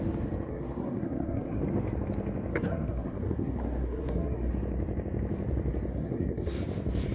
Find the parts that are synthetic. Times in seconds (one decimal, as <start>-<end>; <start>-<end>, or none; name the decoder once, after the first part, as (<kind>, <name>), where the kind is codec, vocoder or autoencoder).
0.5-1.6 (codec, SNAC); 2.5-4.5; 5.9-6.6